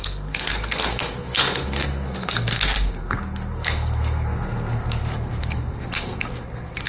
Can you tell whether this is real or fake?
fake